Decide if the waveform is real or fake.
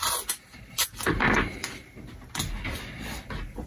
real